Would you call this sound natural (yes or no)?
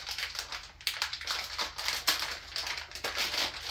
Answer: yes